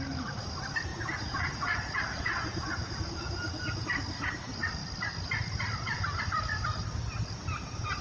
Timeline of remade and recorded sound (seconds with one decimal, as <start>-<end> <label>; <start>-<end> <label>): 0.0-0.9 recorded; 0.9-3.8 remade; 3.8-8.0 recorded